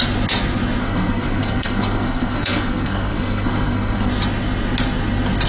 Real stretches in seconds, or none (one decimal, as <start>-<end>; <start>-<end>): 0.0-0.8; 4.1-5.5